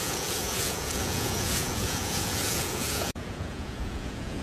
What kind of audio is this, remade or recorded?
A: remade